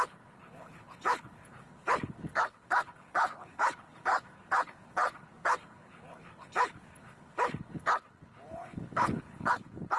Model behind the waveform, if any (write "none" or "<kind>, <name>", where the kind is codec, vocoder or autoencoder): codec, HILCodec